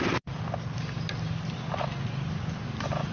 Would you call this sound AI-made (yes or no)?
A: no